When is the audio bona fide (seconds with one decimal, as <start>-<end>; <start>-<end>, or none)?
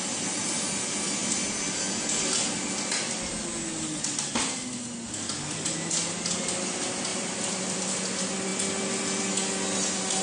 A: 0.0-7.1; 7.9-10.2